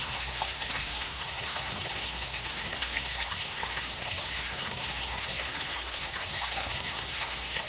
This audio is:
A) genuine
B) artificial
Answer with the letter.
B